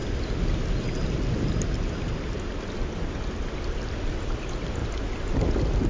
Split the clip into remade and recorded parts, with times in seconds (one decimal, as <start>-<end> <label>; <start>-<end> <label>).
0.0-5.9 recorded